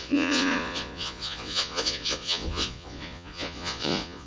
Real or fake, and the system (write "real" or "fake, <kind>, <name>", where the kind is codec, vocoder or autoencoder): fake, vocoder, Vocos